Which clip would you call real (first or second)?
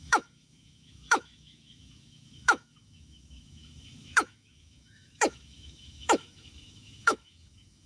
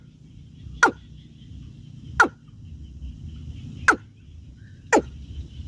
second